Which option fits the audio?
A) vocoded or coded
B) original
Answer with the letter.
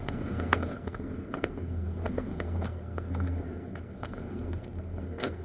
A